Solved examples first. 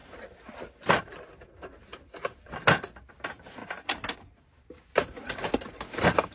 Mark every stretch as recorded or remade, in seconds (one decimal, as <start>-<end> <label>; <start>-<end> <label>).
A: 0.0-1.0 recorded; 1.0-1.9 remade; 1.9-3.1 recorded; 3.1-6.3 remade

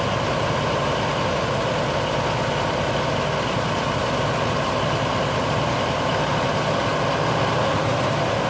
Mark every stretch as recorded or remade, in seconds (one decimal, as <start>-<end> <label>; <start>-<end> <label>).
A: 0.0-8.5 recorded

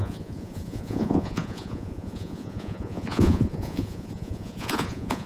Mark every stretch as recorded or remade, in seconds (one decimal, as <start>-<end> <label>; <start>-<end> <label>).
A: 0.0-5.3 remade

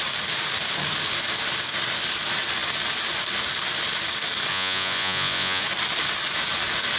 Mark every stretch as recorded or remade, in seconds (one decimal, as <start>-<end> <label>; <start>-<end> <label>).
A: 0.0-4.5 recorded; 4.5-5.6 remade; 5.6-7.0 recorded

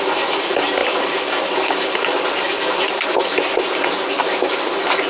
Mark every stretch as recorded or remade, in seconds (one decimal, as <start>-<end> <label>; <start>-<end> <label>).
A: 0.0-5.1 recorded

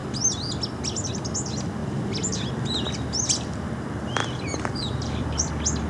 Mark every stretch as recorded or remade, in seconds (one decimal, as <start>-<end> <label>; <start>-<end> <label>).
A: 0.0-4.2 recorded; 4.2-5.5 remade; 5.5-5.9 recorded

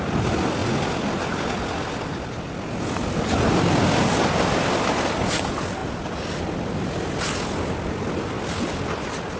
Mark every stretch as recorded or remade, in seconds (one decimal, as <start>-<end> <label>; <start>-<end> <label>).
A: 0.0-9.4 recorded